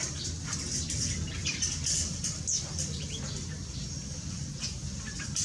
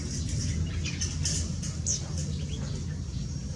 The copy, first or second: first